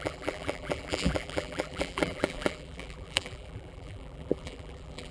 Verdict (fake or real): fake